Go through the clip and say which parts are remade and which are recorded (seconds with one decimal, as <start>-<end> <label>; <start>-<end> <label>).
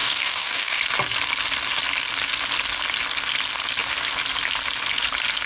0.0-0.8 remade; 0.8-5.5 recorded